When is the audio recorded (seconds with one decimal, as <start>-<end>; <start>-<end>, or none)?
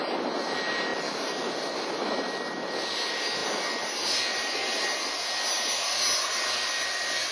0.0-7.3